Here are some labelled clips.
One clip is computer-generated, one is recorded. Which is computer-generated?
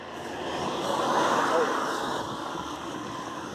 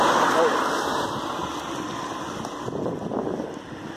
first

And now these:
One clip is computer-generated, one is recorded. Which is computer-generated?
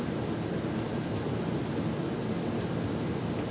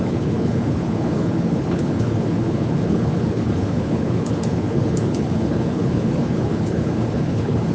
second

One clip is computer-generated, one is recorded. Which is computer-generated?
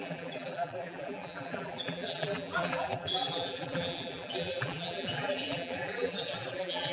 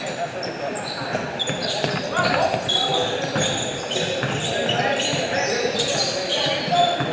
first